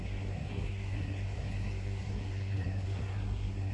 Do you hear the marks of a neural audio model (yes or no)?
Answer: yes